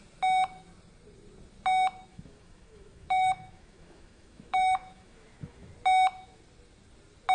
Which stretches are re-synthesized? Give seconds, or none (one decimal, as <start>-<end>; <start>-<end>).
2.1-5.7